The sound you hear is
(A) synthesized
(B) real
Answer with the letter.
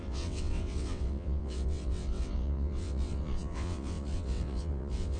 A